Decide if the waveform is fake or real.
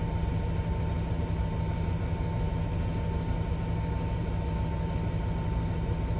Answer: real